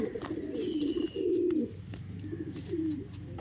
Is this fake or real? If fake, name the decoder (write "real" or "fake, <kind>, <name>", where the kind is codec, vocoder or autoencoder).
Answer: fake, vocoder, BigVGAN v2